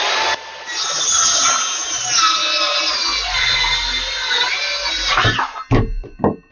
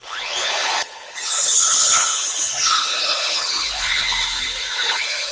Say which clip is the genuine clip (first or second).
first